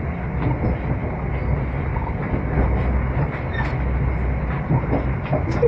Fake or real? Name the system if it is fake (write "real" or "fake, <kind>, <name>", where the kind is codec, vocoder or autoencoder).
real